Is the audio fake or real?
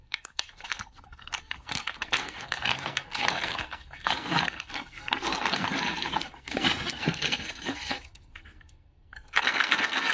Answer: fake